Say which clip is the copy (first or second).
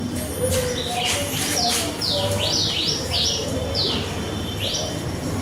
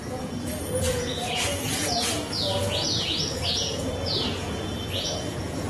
second